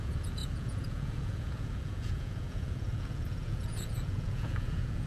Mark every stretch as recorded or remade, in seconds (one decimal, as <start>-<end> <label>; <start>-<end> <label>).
0.0-5.1 remade